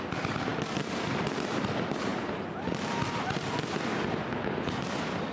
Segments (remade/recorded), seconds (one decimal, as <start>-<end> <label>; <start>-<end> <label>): 0.0-5.3 remade